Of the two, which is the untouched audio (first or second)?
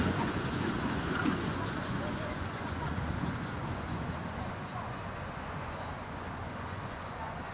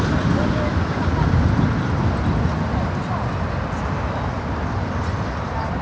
second